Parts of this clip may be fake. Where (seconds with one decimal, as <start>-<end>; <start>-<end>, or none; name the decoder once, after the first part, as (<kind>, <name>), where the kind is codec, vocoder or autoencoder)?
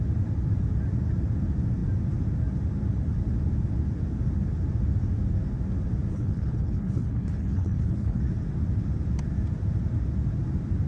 6.1-8.2 (codec, HILCodec)